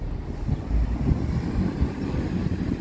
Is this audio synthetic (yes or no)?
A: no